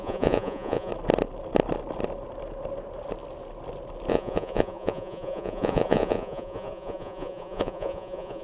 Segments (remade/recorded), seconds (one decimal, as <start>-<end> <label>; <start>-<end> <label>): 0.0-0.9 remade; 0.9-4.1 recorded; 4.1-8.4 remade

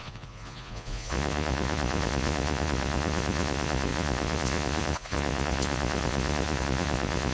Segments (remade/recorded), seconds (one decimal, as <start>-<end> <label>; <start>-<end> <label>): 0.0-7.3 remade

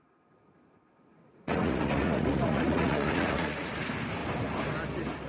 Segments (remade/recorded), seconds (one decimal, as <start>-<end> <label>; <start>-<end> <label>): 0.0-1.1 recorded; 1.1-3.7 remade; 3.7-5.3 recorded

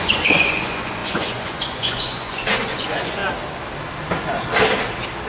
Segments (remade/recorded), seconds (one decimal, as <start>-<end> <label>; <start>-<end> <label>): 0.0-3.2 remade; 3.2-5.3 recorded

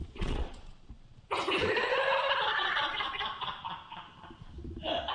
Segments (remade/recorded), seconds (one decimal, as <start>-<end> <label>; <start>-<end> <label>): 0.0-1.3 remade; 1.3-2.4 recorded; 2.4-3.6 remade; 3.6-5.1 recorded

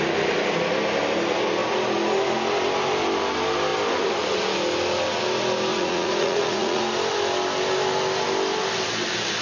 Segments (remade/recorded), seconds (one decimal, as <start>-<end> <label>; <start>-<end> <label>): 0.0-5.7 recorded; 5.7-6.8 remade; 6.8-9.4 recorded

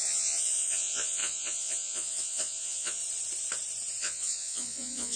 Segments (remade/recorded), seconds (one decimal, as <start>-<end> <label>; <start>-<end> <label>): 0.0-3.0 remade; 3.0-4.0 recorded; 4.0-5.2 remade